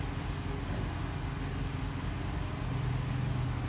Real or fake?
real